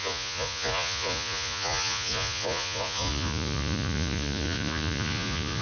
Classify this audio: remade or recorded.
remade